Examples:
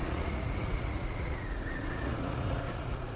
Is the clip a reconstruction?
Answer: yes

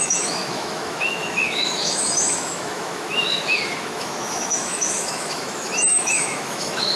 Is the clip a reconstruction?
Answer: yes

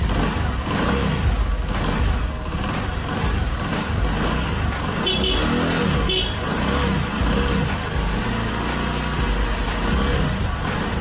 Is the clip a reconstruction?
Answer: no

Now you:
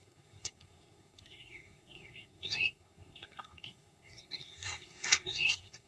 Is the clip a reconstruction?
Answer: yes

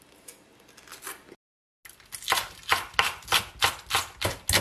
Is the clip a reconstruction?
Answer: no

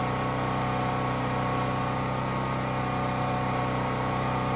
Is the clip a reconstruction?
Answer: no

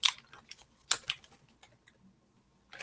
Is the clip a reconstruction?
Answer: no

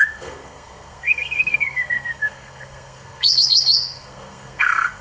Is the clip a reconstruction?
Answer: yes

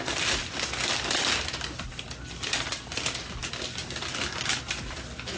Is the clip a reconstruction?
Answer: no